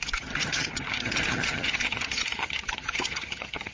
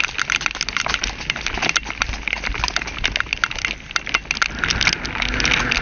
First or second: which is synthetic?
first